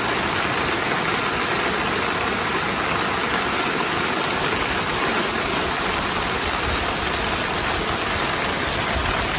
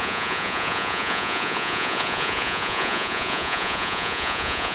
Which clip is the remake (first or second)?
second